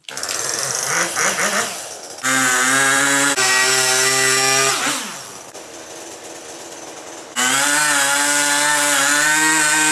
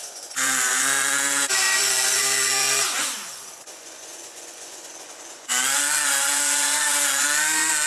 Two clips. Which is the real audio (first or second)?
first